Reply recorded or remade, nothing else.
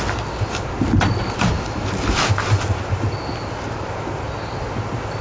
recorded